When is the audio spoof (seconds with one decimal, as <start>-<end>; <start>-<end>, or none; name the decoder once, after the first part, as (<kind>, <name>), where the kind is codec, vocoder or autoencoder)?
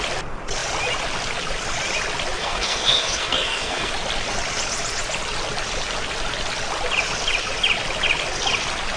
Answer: 2.4-3.9 (codec, SNAC)